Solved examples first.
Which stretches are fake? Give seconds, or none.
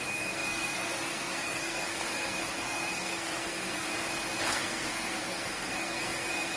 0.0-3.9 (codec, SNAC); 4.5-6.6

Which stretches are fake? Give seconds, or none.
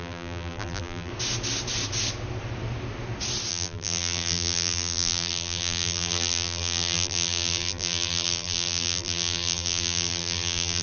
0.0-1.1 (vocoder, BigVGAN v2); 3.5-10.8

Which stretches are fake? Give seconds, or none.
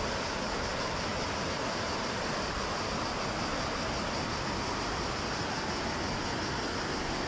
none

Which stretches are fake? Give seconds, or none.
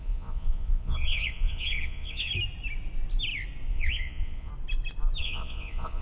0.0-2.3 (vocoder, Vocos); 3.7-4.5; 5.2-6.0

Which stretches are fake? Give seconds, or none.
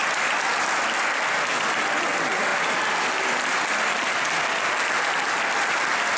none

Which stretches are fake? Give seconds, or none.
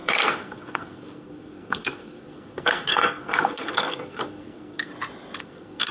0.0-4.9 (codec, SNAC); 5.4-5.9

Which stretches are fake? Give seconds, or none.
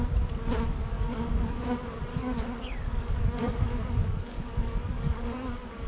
0.9-1.6 (codec, DAC); 2.1-5.9